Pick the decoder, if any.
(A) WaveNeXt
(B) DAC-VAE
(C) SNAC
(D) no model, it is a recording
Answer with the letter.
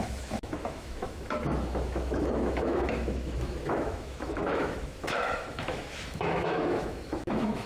B